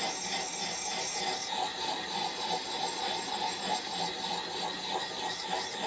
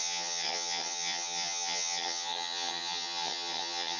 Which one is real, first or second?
first